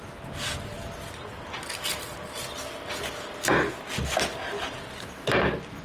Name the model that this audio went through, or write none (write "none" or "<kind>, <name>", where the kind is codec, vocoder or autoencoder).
none